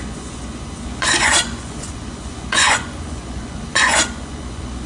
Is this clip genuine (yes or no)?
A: no